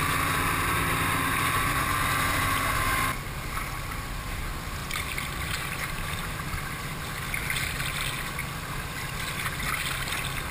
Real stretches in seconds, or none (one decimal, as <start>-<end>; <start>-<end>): 0.0-4.8; 6.8-10.5